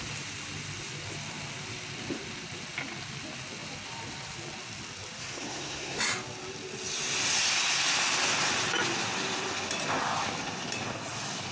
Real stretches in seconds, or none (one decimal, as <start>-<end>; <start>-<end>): 0.0-5.2; 6.0-11.5